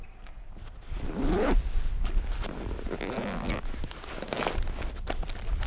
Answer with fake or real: real